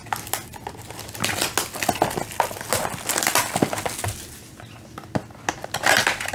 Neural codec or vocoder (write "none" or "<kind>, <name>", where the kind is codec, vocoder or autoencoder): none